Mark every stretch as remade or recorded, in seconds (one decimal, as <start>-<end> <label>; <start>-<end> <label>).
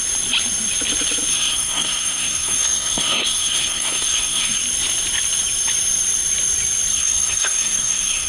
0.0-1.3 recorded; 1.3-4.6 remade; 4.6-6.9 recorded; 6.9-8.3 remade